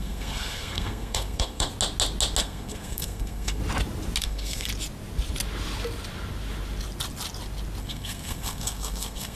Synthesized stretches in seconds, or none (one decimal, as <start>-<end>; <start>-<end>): 0.0-1.7; 2.4-3.6; 4.2-4.7; 7.8-9.4